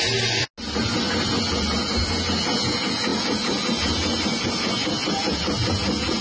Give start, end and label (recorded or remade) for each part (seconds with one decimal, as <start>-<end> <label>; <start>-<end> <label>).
0.0-6.2 recorded